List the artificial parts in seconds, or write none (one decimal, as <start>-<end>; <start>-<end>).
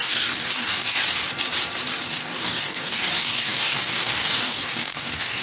0.0-1.0; 2.1-5.4